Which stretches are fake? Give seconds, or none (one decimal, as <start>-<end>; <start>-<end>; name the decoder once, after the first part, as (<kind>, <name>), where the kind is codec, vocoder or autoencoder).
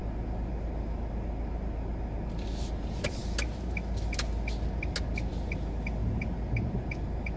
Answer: none